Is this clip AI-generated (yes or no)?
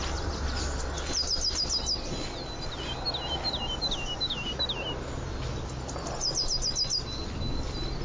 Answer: no